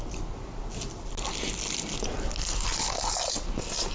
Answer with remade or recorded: recorded